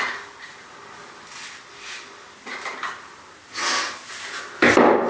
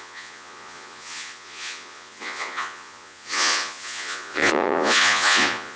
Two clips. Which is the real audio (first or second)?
first